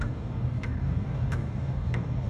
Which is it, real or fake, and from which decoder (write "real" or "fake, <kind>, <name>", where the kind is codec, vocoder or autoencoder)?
fake, codec, DAC